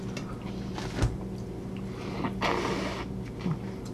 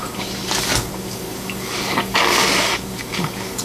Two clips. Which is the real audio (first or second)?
first